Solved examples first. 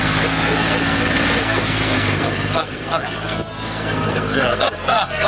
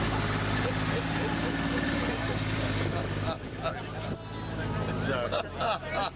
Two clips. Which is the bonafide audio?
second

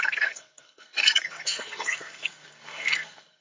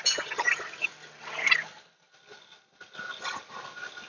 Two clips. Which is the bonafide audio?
second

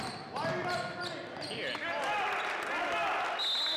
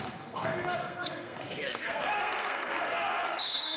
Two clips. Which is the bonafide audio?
first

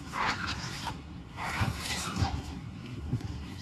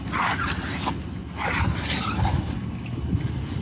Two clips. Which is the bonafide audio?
second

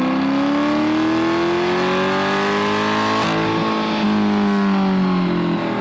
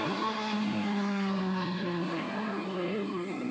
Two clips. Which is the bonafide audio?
first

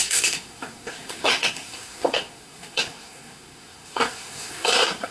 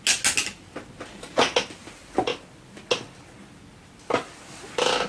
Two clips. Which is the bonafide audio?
second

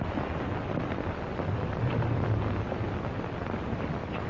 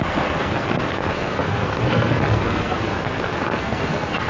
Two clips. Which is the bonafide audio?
first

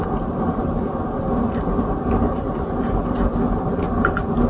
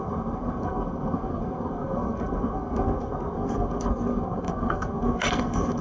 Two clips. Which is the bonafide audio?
first